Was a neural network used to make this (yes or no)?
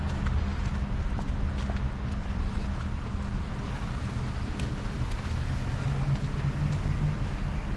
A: no